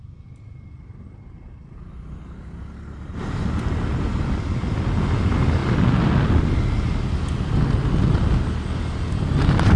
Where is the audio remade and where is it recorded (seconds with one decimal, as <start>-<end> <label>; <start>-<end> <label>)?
0.0-9.8 recorded